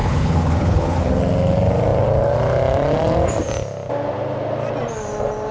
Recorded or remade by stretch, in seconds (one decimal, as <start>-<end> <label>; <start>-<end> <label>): 0.0-1.1 remade; 1.1-5.5 recorded